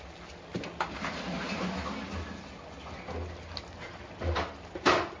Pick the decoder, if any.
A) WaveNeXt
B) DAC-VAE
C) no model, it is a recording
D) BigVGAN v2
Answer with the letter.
C